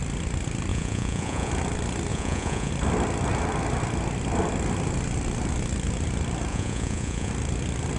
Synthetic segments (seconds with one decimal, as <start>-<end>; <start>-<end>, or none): 0.7-1.5; 2.1-2.7; 6.5-7.3